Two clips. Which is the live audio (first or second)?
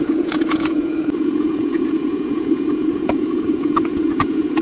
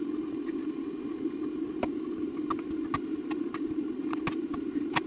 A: second